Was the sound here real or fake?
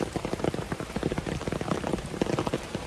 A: fake